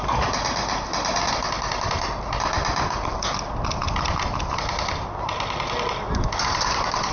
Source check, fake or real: real